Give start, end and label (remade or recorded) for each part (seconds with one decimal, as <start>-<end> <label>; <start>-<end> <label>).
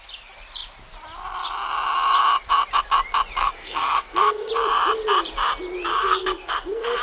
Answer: 0.0-3.4 recorded; 3.4-4.5 remade; 4.5-5.9 recorded; 5.9-7.0 remade